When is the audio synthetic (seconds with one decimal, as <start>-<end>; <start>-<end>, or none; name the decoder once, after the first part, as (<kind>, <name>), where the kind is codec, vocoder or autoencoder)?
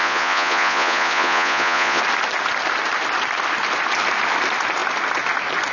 0.0-2.0 (vocoder, Vocos)